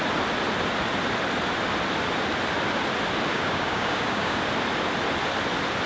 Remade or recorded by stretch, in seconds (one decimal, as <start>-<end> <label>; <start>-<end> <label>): 0.0-3.3 recorded; 3.3-4.4 remade; 4.4-5.9 recorded

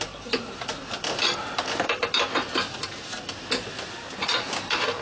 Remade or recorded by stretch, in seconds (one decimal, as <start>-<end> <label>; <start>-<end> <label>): 0.0-5.0 recorded